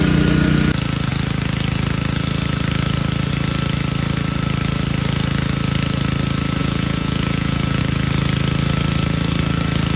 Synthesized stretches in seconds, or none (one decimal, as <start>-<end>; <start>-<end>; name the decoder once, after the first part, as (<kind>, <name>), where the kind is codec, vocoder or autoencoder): 6.6-7.8 (vocoder, Vocos)